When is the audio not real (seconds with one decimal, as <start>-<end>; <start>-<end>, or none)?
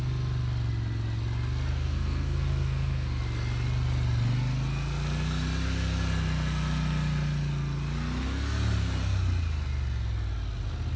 1.7-3.2